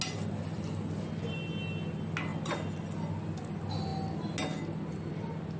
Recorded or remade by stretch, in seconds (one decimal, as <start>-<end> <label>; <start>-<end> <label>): 0.0-5.6 recorded